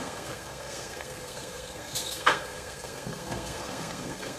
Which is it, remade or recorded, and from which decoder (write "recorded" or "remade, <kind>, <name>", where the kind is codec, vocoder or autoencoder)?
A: remade, codec, SNAC